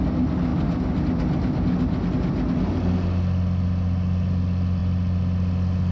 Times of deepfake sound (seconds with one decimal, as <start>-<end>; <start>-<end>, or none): none